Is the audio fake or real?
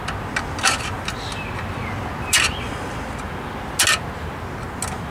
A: real